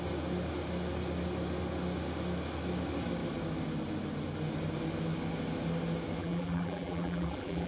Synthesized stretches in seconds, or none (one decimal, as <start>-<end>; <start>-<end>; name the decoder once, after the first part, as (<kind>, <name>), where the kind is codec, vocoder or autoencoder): 6.2-7.7 (vocoder, BigVGAN v2)